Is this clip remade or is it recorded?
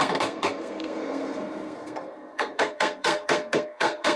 remade